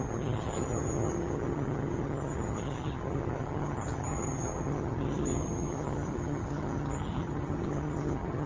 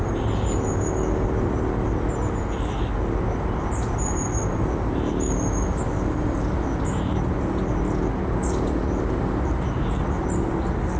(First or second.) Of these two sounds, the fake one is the first